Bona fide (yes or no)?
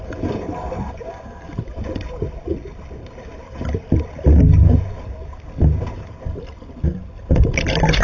yes